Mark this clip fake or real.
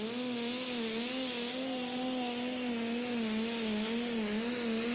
real